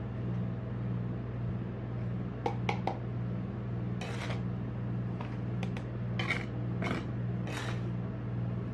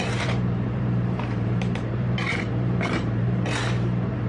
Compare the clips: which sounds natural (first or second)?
first